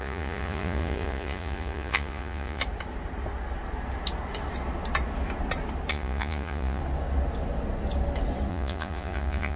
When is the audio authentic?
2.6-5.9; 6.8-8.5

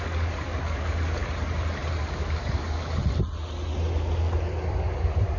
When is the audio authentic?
1.2-2.0; 3.0-4.6

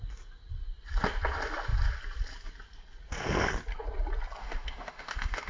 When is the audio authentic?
0.0-4.4

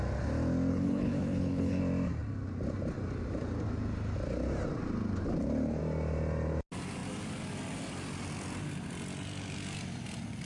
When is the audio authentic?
0.0-0.7; 1.8-10.5

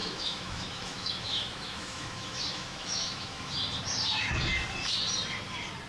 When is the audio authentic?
3.5-5.9